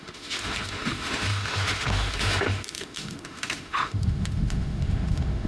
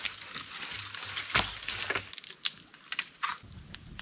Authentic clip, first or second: second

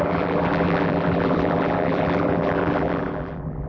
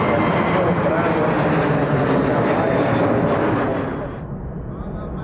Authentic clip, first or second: second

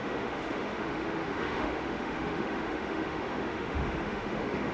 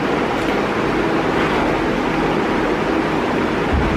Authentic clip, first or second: second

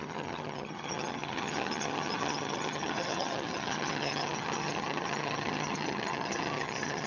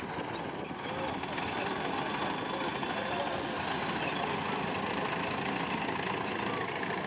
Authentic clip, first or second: second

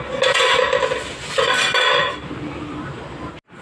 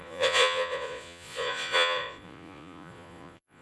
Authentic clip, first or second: first